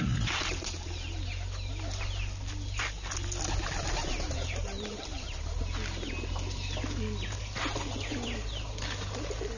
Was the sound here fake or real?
real